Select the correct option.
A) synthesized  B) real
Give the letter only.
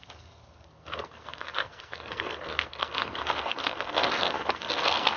A